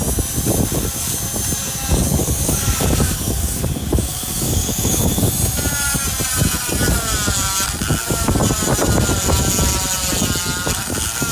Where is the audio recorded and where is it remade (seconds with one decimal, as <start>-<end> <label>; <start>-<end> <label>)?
0.0-2.2 recorded; 2.2-5.3 remade; 5.3-11.3 recorded